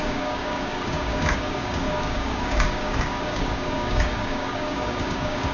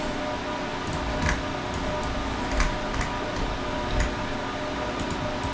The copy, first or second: first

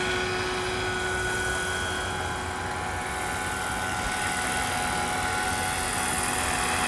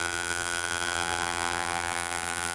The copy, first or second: second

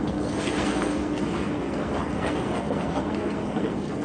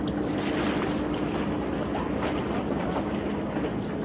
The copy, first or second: first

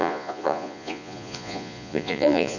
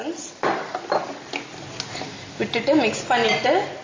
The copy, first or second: first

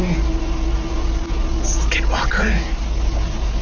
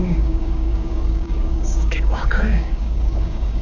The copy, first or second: second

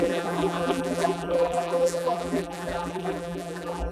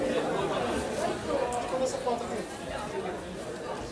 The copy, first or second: first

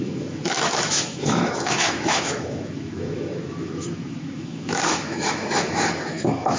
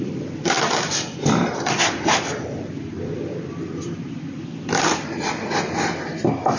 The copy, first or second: first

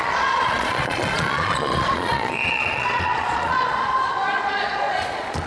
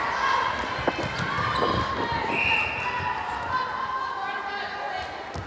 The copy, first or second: first